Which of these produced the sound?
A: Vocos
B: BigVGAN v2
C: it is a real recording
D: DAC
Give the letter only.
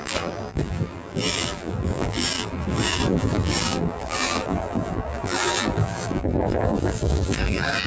B